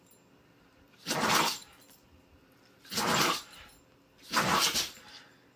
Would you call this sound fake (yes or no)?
no